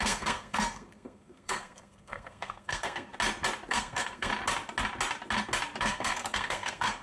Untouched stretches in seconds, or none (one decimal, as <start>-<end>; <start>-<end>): 3.1-3.7; 4.3-5.8